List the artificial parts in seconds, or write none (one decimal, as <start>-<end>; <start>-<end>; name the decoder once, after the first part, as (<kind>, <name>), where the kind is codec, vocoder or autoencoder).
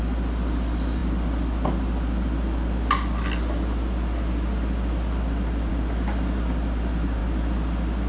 none